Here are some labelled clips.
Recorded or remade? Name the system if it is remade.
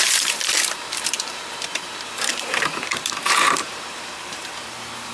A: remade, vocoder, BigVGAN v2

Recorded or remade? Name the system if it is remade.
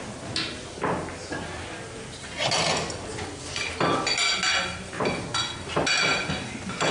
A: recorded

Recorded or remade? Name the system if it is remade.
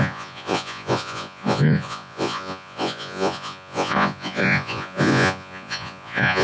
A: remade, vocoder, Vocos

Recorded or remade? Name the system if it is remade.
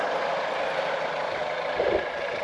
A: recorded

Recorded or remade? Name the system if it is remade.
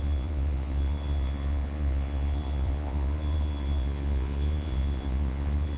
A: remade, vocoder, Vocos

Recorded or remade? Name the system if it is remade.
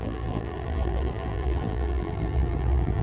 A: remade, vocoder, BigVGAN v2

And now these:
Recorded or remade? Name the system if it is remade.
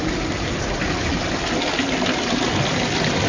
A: recorded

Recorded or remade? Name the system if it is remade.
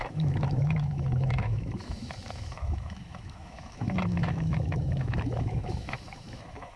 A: remade, autoencoder, DAC-VAE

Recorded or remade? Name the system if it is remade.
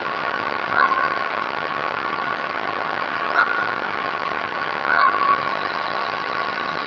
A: remade, vocoder, HiFi-GAN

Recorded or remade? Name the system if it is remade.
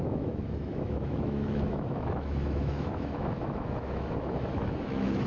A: remade, autoencoder, DAC-VAE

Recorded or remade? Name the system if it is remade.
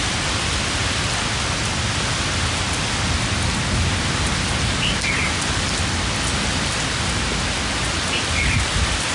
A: recorded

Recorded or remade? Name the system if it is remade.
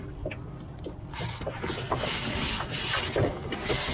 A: recorded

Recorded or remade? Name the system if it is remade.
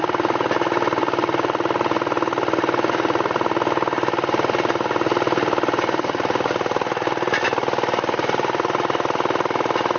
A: recorded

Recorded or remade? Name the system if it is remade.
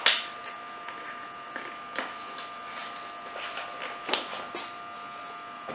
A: recorded